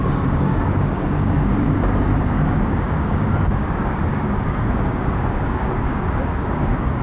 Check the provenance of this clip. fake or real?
fake